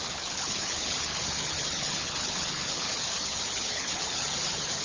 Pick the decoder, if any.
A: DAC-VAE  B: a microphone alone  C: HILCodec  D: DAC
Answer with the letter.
C